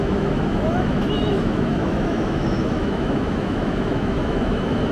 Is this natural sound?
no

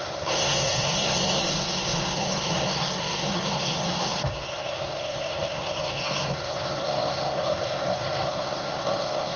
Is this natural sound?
no